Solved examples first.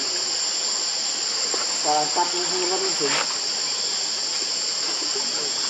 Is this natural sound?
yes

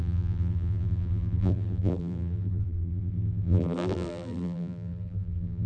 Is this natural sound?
no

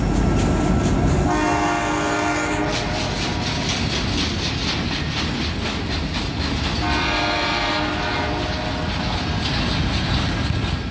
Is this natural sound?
yes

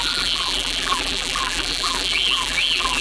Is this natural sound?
no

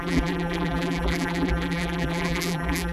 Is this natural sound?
no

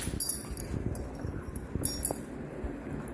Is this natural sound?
yes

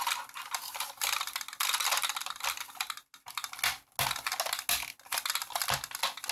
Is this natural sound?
yes